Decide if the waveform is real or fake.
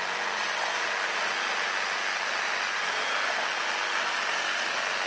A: real